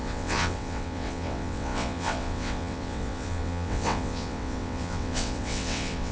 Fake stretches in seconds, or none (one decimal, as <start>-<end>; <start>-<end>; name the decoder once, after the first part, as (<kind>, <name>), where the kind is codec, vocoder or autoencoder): 0.0-6.1 (vocoder, WaveNeXt)